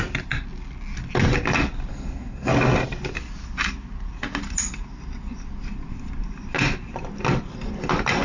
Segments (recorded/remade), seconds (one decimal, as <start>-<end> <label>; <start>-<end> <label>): 0.0-1.9 recorded; 1.9-2.5 remade; 2.5-8.2 recorded